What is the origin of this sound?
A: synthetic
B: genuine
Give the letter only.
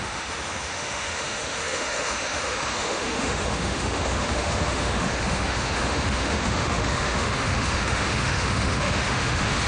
A